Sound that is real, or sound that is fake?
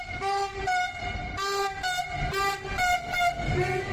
real